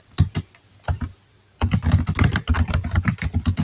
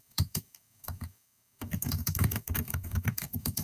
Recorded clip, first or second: first